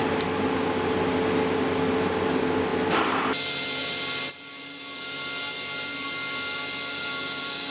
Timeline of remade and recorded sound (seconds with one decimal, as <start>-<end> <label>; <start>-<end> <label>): 0.0-7.7 recorded